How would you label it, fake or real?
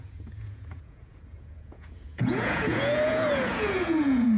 fake